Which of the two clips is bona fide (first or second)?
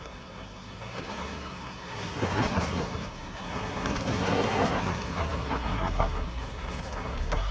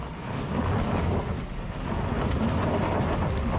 second